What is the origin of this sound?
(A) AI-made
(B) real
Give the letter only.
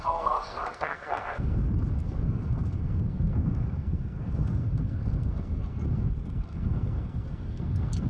A